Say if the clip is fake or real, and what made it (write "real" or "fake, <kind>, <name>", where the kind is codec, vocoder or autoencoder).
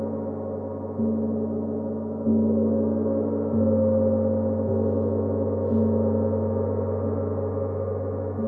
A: real